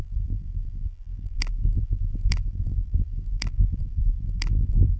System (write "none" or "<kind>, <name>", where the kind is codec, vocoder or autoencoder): vocoder, BigVGAN v2